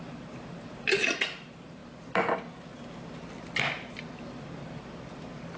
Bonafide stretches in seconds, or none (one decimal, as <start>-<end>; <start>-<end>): 1.8-5.6